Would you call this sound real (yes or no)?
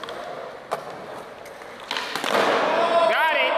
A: yes